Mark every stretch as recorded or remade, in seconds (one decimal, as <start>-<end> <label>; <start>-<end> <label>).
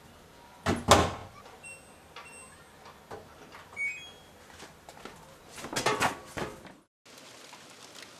0.0-8.2 recorded